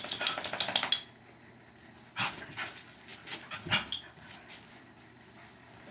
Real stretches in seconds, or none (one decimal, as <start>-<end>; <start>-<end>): 0.0-3.1; 5.2-5.9